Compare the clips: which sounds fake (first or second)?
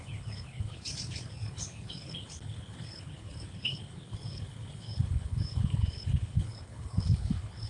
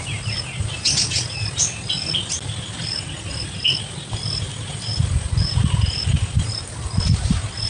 first